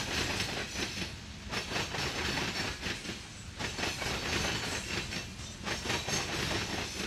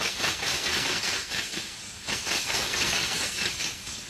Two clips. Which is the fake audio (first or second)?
second